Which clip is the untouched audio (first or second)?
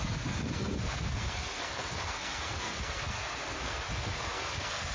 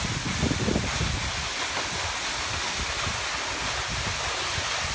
second